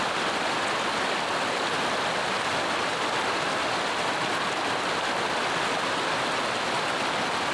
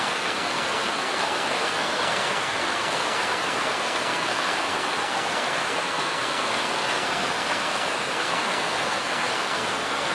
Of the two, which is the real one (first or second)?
first